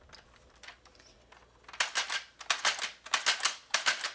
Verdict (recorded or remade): recorded